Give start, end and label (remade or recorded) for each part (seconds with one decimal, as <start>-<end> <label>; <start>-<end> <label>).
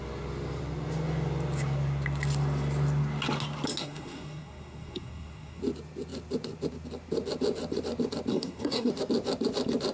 0.0-3.8 recorded; 3.8-5.6 remade; 5.6-8.3 recorded; 8.3-8.9 remade; 8.9-9.9 recorded